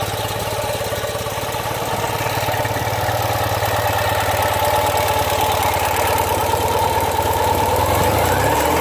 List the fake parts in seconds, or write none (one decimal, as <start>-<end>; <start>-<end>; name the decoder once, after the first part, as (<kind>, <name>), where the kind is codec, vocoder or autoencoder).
6.4-8.8 (vocoder, BigVGAN v2)